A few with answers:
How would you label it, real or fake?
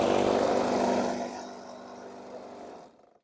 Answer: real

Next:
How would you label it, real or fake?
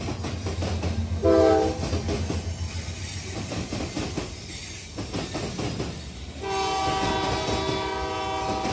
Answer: real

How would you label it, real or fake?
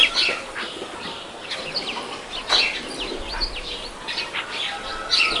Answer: real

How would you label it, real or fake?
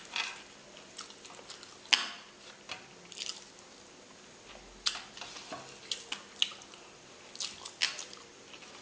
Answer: real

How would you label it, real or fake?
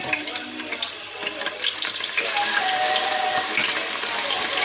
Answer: real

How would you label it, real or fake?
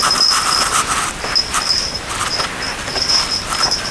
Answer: real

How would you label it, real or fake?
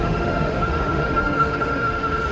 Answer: fake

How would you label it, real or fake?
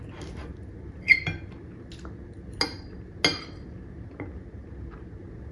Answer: real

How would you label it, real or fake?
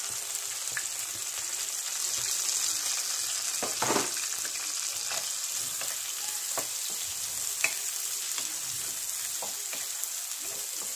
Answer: real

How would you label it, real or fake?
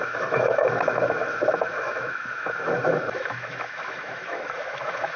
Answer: fake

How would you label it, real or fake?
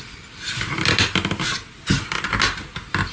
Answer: real